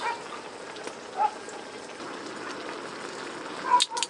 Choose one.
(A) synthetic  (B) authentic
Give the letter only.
B